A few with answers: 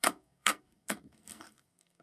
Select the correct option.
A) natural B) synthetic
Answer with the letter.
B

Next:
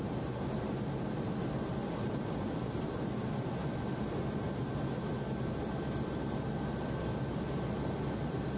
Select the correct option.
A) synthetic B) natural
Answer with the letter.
B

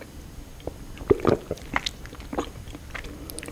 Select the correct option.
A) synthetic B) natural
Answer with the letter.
B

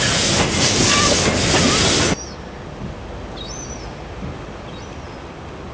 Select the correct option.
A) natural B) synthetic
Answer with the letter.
A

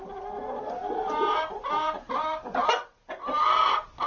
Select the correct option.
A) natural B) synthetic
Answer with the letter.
A